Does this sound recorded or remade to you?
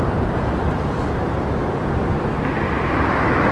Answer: recorded